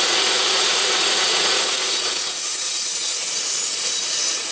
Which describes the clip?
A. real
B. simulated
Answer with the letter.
B